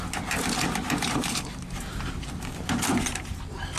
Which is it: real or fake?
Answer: real